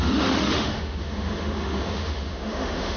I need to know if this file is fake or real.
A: fake